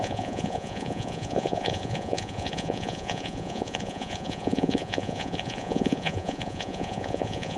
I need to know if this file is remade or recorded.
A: remade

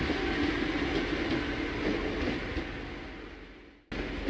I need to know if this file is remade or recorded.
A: recorded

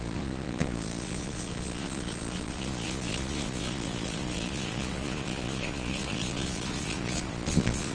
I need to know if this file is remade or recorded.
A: remade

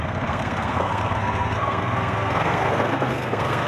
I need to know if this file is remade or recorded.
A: remade